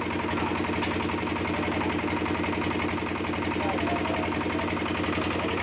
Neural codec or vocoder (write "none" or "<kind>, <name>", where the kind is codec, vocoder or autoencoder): none